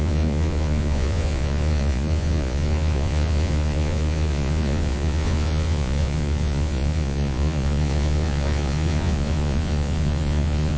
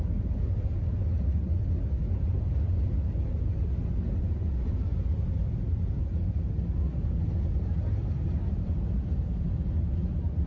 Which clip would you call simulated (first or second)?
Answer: first